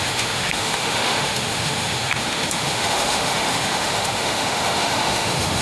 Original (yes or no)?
no